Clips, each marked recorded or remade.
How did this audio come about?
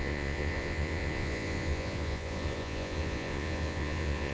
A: remade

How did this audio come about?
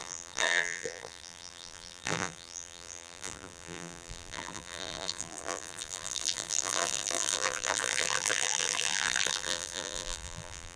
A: remade